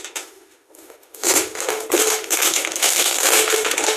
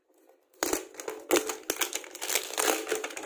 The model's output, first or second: first